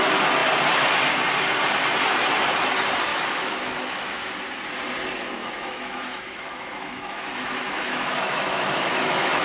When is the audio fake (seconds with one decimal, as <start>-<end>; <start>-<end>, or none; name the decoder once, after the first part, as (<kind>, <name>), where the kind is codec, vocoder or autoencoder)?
3.1-4.3 (autoencoder, DAC-VAE); 5.4-9.4